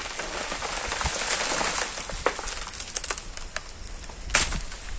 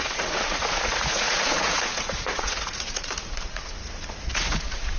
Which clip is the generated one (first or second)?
second